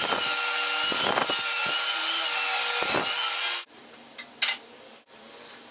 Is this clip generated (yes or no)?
no